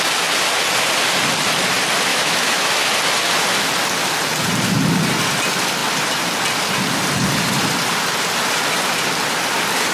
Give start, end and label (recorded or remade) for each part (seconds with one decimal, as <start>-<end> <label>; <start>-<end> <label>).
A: 0.0-2.1 recorded; 2.1-2.7 remade; 2.7-9.9 recorded